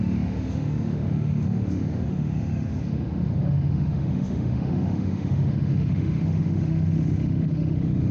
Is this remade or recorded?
remade